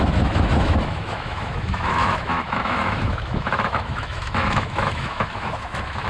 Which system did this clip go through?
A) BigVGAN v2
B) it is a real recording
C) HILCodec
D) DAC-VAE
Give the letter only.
D